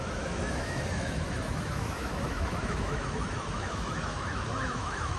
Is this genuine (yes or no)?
no